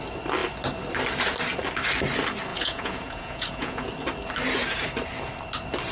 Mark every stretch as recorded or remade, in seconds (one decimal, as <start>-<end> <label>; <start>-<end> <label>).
0.0-2.5 recorded; 2.5-3.9 remade; 3.9-5.9 recorded

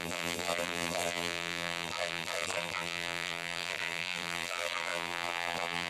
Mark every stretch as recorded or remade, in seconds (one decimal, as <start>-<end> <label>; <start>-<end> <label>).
0.0-5.9 remade